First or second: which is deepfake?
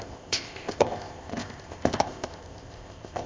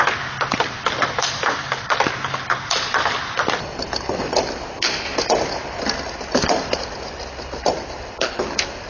first